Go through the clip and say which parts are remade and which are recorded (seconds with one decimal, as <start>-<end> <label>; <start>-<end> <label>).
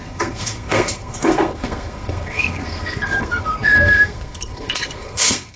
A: 0.0-5.6 remade